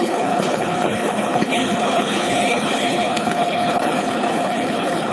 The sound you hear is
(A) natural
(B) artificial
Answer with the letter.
B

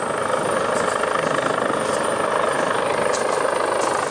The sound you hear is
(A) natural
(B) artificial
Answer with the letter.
A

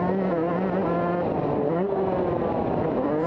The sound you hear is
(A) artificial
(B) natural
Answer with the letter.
B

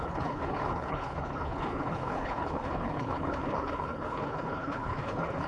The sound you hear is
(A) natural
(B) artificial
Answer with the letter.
B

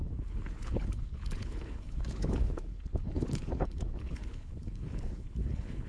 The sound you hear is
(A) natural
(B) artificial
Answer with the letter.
B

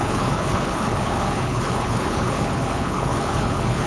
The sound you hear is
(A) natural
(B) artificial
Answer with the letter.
B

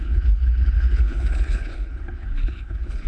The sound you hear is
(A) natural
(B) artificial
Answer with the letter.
B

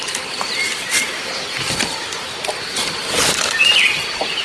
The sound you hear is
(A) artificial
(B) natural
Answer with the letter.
B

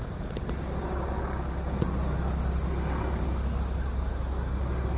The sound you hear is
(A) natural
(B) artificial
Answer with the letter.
A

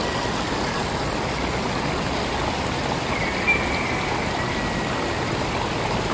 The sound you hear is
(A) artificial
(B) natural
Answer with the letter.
B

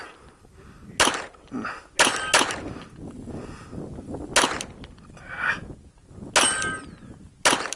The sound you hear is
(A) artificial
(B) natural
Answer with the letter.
B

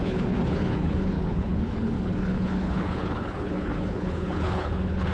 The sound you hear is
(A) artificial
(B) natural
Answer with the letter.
A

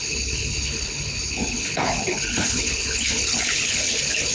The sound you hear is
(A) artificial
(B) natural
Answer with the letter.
A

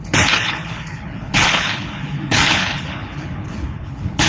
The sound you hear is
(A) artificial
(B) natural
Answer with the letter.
A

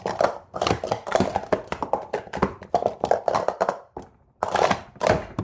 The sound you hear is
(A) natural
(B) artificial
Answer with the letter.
A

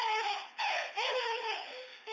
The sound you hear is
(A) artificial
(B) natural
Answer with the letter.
A